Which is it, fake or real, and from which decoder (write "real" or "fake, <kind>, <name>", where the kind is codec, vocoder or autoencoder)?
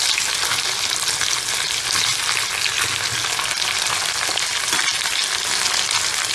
real